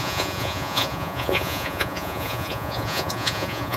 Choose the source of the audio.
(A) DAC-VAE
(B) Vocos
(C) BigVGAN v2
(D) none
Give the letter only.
B